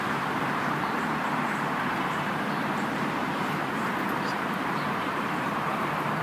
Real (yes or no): no